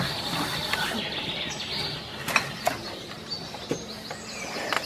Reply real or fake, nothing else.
real